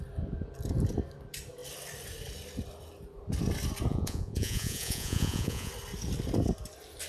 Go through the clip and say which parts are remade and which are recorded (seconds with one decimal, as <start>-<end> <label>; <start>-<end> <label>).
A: 0.0-3.9 recorded; 3.9-5.7 remade; 5.7-7.1 recorded